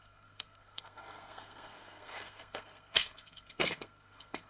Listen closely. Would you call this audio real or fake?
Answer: fake